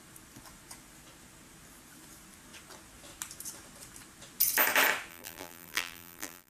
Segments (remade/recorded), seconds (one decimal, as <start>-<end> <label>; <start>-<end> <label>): 0.0-5.1 recorded; 5.1-6.5 remade

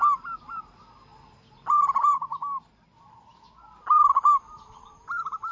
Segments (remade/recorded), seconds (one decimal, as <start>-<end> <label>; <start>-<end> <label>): 0.0-2.3 remade; 2.3-4.6 recorded; 4.6-5.5 remade